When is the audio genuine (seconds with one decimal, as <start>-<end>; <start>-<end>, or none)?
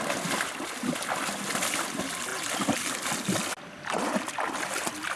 0.0-5.2